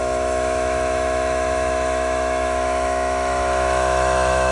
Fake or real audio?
fake